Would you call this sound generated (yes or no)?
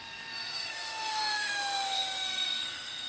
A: yes